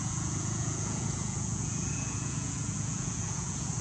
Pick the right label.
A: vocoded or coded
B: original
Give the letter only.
A